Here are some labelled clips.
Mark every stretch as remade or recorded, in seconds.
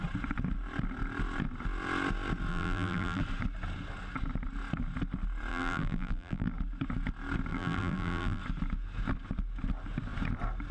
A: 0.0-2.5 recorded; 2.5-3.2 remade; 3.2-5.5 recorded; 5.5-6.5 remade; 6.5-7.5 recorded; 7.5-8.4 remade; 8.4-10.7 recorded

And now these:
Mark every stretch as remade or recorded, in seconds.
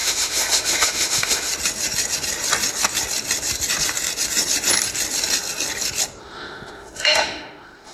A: 0.0-1.5 remade; 1.5-6.2 recorded; 6.2-7.9 remade